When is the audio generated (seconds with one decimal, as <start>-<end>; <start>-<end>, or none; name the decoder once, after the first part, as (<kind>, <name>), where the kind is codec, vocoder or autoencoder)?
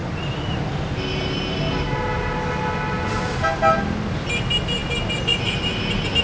none